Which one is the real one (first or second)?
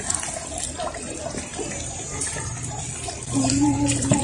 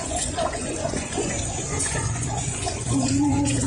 first